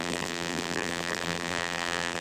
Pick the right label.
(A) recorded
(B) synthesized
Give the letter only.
B